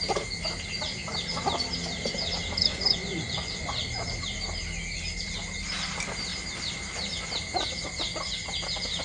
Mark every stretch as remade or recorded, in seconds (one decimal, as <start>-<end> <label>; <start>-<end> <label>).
0.0-2.7 recorded; 2.7-3.8 remade; 3.8-9.0 recorded